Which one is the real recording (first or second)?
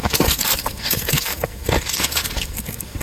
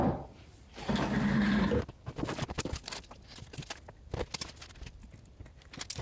second